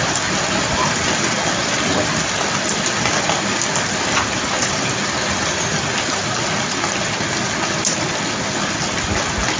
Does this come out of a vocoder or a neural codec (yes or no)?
no